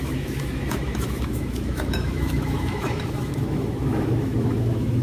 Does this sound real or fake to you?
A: fake